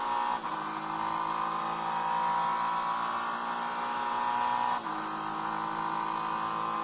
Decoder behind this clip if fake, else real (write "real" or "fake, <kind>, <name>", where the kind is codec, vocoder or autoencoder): real